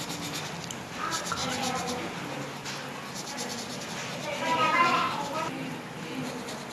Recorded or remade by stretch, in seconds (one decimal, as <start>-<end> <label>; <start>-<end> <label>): 0.0-6.7 recorded